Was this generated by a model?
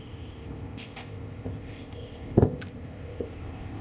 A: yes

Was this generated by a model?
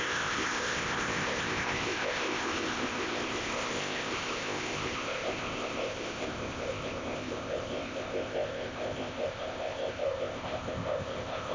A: yes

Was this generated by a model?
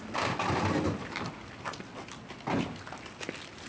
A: no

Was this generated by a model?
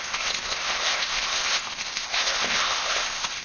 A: yes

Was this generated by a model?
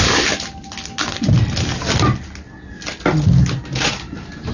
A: no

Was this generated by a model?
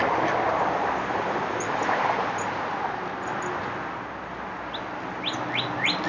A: no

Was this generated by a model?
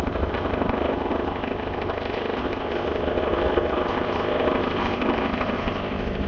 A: yes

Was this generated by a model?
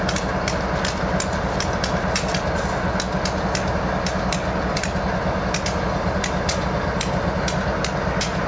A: no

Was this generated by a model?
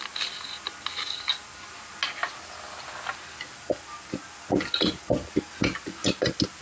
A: no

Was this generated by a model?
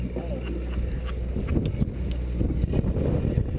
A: no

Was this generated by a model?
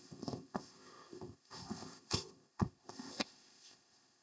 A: yes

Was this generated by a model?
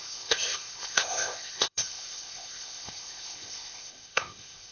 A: yes